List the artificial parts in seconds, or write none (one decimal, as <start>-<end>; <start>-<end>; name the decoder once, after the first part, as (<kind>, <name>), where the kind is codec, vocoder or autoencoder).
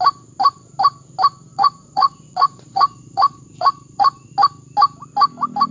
1.5-4.3 (vocoder, Vocos)